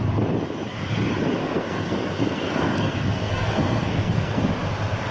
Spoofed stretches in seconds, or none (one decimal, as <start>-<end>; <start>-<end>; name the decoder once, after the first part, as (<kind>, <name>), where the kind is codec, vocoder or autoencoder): 1.4-4.5 (codec, SNAC)